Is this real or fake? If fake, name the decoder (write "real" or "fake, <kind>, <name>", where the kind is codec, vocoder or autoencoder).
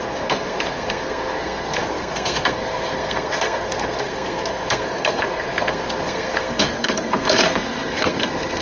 fake, codec, SNAC